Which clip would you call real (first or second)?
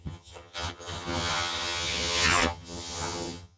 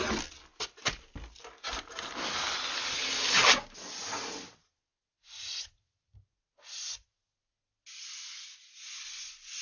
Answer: second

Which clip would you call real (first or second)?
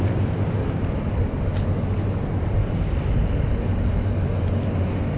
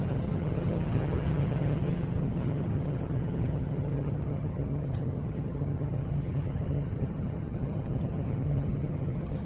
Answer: first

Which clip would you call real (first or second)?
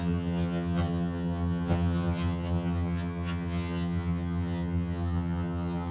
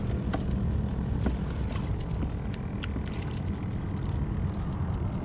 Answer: second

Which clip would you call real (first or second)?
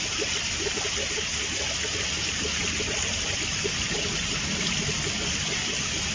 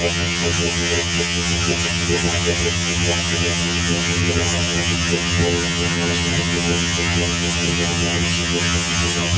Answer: first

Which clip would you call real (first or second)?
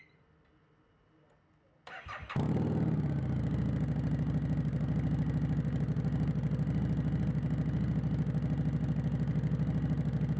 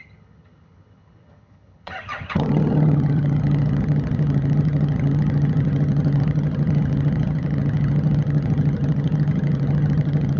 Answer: first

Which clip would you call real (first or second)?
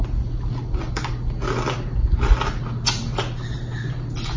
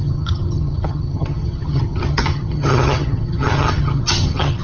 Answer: first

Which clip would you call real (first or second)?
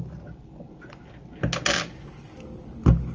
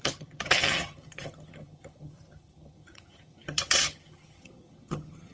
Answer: first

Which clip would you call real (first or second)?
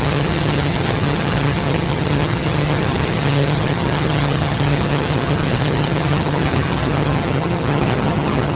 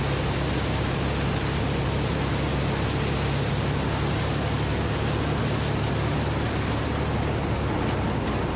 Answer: second